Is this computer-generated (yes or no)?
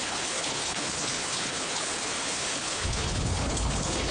yes